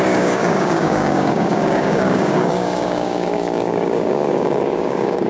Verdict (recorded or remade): remade